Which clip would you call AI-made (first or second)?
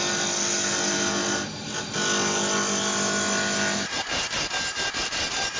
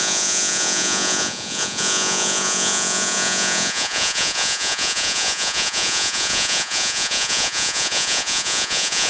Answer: second